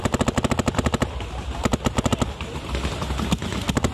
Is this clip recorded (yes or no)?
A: yes